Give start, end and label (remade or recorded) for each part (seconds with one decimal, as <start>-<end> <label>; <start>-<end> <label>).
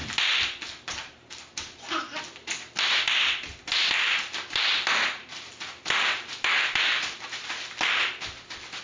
0.0-8.8 recorded